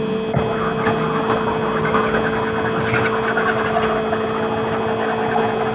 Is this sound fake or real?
real